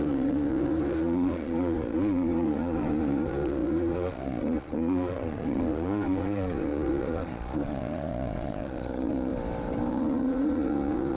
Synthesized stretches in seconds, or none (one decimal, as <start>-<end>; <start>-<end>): 0.0-9.3; 9.9-11.2